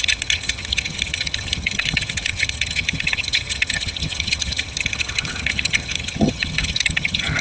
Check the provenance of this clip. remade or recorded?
remade